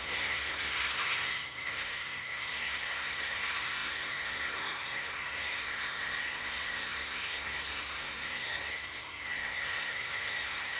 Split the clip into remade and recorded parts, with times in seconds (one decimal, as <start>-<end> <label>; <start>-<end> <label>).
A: 0.0-10.8 remade